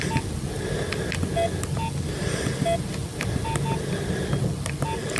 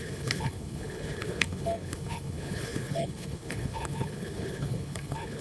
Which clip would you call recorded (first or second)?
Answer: first